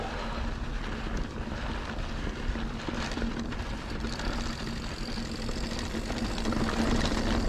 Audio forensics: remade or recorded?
recorded